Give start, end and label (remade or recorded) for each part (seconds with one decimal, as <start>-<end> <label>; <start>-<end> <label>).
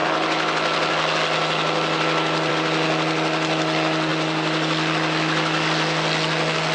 0.0-6.7 recorded